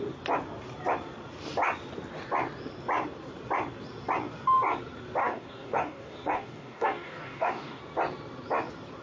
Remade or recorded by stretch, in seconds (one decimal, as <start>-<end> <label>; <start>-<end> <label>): 0.0-5.2 recorded; 5.2-7.8 remade; 7.8-9.0 recorded